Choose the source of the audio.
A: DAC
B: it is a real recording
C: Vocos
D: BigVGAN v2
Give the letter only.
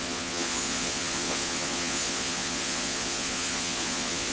C